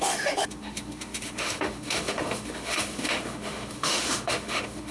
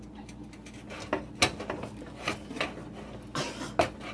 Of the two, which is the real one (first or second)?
second